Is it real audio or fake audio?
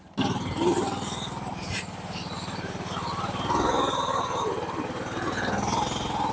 real